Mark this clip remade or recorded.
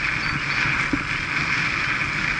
recorded